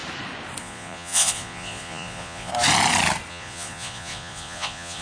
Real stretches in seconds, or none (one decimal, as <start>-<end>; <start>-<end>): 0.0-0.6; 2.5-3.3